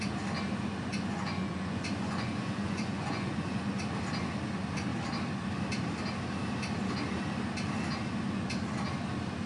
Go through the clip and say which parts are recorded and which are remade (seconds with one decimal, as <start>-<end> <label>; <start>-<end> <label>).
0.0-0.9 recorded; 0.9-3.8 remade; 3.8-9.5 recorded